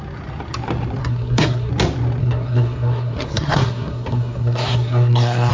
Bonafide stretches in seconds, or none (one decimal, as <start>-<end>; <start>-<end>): 0.0-1.0; 1.7-2.2